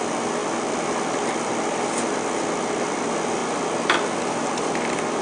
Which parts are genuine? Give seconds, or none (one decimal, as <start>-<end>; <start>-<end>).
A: 0.0-5.2